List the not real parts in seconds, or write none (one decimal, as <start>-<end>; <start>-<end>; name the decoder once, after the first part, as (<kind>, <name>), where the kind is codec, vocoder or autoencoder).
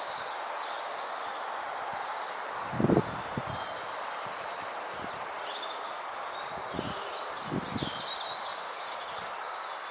8.5-9.2 (vocoder, Vocos)